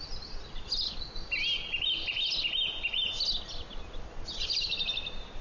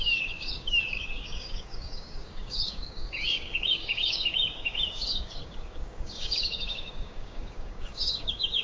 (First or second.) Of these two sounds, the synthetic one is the second